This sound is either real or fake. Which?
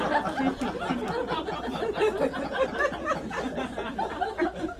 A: real